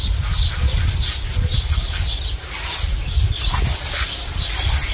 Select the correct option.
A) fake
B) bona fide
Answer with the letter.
B